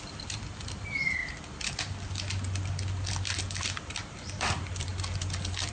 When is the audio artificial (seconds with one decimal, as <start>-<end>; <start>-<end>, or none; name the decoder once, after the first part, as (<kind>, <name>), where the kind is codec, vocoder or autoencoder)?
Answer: 0.0-1.2 (vocoder, BigVGAN v2); 4.2-4.9